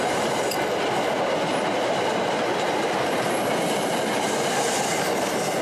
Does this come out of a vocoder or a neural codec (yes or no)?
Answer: no